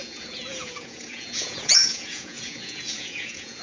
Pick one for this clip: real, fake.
fake